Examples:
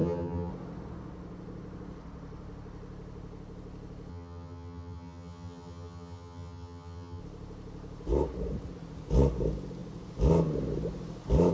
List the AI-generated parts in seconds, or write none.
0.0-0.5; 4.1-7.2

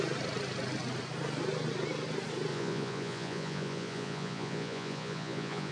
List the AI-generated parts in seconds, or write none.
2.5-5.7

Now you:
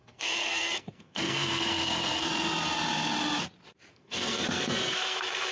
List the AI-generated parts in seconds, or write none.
0.0-2.3; 3.9-5.5

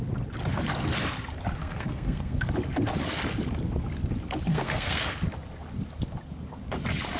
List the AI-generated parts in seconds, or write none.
1.6-2.5; 4.5-5.1

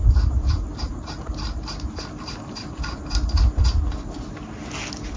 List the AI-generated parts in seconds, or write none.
0.0-3.1